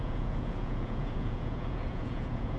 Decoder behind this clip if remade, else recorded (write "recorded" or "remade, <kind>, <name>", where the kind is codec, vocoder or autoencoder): remade, vocoder, Vocos